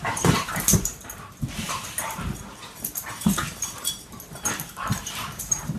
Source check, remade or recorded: remade